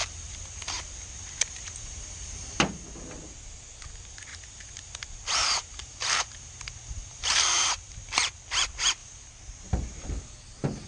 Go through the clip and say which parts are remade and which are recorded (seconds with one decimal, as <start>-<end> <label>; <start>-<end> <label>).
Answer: 0.0-2.6 remade; 2.6-4.3 recorded; 4.3-4.9 remade; 4.9-5.4 recorded; 5.4-8.3 remade; 8.3-9.0 recorded; 9.0-10.2 remade; 10.2-10.9 recorded